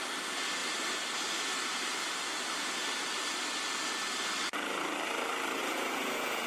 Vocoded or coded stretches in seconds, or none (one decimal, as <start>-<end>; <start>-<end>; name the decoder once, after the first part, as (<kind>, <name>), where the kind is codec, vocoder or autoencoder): 5.6-6.5 (vocoder, Vocos)